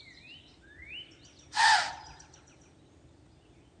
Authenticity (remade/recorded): recorded